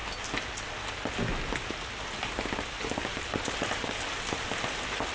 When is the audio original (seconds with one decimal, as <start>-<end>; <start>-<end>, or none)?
0.0-5.1